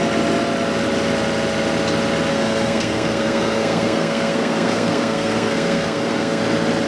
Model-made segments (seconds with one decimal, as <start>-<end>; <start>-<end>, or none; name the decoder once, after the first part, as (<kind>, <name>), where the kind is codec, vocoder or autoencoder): 2.3-6.4 (codec, SNAC)